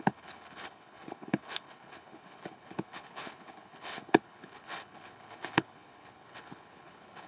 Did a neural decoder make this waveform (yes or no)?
yes